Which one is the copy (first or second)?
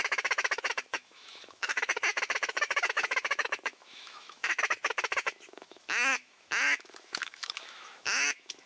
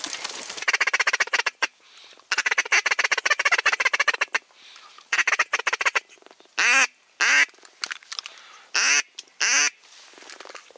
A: first